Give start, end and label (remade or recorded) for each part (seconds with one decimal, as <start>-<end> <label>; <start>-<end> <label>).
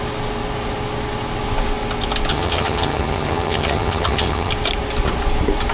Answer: 0.0-2.3 recorded; 2.3-4.5 remade; 4.5-5.7 recorded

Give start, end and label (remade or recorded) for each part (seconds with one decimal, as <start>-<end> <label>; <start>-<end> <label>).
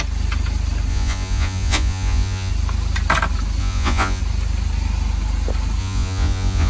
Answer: 0.0-0.9 recorded; 0.9-2.5 remade; 2.5-3.6 recorded; 3.6-4.2 remade; 4.2-5.8 recorded; 5.8-6.7 remade